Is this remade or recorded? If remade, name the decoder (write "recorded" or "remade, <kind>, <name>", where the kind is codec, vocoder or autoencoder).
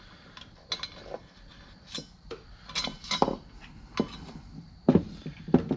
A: recorded